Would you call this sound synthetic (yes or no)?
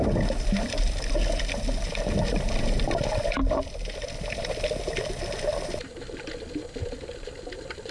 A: yes